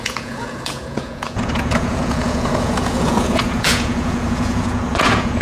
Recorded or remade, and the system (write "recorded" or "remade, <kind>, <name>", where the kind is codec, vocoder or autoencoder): remade, vocoder, Vocos